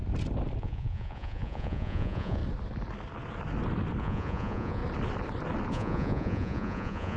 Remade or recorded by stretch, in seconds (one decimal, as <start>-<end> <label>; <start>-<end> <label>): 0.0-0.6 recorded; 0.6-2.4 remade; 2.4-4.0 recorded; 4.0-4.8 remade; 4.8-5.7 recorded; 5.7-7.2 remade